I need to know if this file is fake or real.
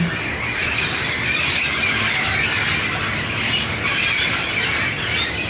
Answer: real